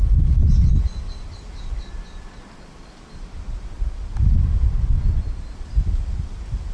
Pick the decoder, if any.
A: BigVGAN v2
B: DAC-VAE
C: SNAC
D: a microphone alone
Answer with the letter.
D